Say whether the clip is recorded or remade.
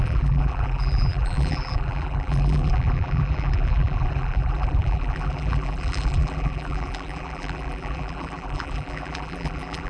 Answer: remade